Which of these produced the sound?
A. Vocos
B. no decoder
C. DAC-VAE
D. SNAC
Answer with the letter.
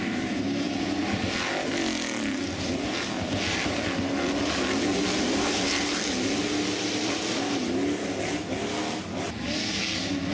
B